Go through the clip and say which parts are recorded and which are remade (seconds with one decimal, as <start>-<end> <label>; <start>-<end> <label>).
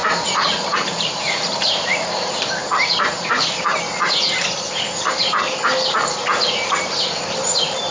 0.0-2.6 remade; 2.6-6.6 recorded; 6.6-7.9 remade